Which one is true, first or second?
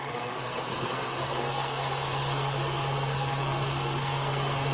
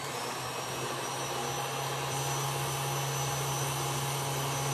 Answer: second